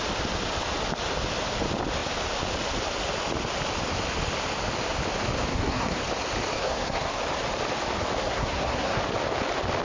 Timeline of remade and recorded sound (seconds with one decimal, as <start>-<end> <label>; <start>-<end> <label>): 0.0-5.5 recorded; 5.5-6.0 remade; 6.0-6.5 recorded; 6.5-7.2 remade; 7.2-8.2 recorded; 8.2-9.0 remade; 9.0-9.8 recorded